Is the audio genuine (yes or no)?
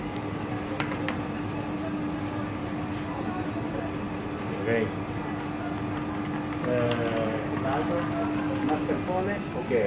yes